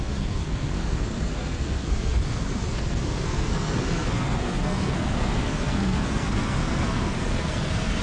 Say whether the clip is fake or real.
fake